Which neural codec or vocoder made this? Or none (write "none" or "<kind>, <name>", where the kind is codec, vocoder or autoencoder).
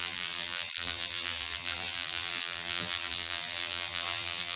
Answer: vocoder, BigVGAN v2